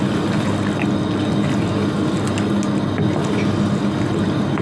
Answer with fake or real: real